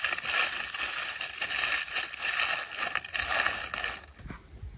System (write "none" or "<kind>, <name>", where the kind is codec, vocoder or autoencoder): none